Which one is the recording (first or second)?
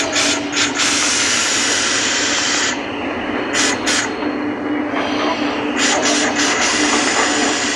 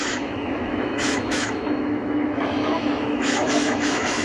first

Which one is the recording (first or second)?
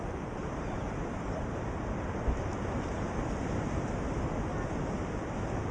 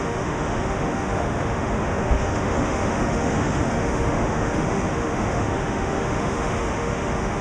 first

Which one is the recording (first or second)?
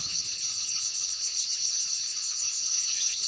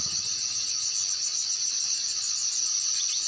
second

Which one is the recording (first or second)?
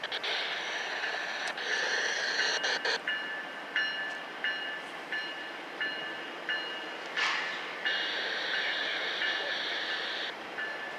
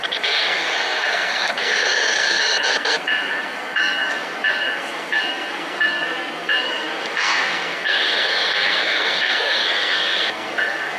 first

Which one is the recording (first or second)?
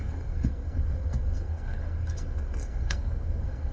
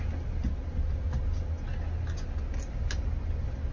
second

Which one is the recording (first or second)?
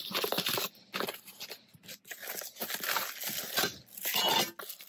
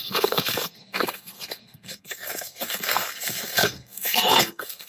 first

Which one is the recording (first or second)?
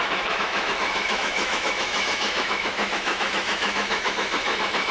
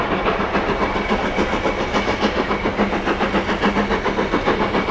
second